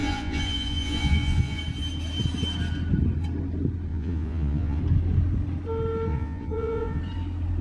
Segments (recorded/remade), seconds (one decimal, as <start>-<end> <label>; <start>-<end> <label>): 0.0-1.6 remade; 1.6-3.9 recorded; 3.9-4.8 remade; 4.8-6.1 recorded; 6.1-7.0 remade; 7.0-7.6 recorded

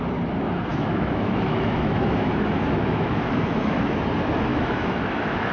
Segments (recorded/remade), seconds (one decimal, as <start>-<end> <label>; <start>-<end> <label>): 0.0-0.7 recorded; 0.7-4.0 remade; 4.0-4.5 recorded; 4.5-5.5 remade

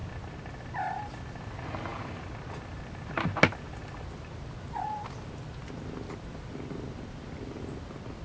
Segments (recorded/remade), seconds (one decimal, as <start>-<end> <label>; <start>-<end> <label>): 0.0-0.6 recorded; 0.6-1.9 remade; 1.9-6.5 recorded; 6.5-8.2 remade

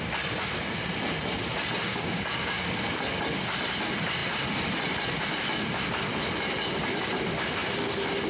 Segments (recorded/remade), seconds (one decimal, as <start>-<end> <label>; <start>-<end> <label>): 0.0-1.9 recorded; 1.9-2.6 remade; 2.6-8.3 recorded

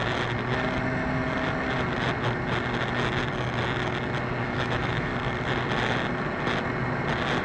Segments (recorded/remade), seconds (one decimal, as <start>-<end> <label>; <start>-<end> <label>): 0.0-4.4 recorded; 4.4-5.1 remade; 5.1-7.4 recorded